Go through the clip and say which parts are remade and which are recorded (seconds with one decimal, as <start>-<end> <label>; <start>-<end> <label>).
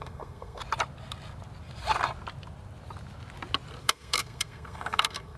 0.0-0.6 remade; 0.6-3.8 recorded; 3.8-5.4 remade